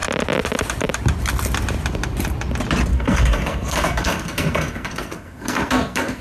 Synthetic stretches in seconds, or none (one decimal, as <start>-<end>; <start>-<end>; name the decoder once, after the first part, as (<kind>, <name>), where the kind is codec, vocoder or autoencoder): 2.9-6.2 (codec, SNAC)